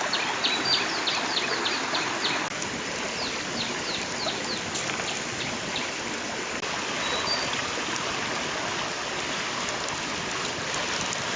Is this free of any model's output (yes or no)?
yes